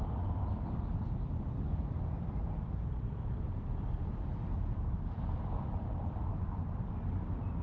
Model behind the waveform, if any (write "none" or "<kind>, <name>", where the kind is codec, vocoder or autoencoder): none